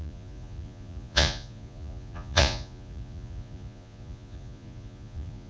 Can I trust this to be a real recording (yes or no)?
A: no